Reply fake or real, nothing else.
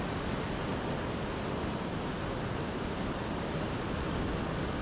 real